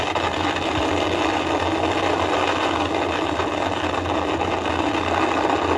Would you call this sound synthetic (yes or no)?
no